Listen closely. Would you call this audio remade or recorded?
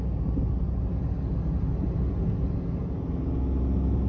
recorded